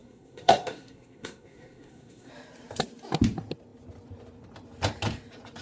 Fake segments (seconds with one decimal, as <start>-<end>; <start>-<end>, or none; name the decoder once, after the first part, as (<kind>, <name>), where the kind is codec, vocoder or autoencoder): 0.0-2.3 (codec, SNAC)